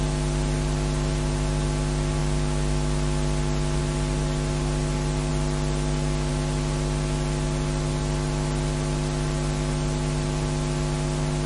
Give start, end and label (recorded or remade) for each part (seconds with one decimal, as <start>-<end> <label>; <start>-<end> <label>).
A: 0.0-11.5 recorded